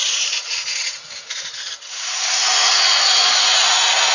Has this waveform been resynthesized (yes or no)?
yes